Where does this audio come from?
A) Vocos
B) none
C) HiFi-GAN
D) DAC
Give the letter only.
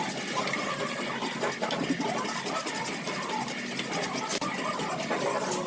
B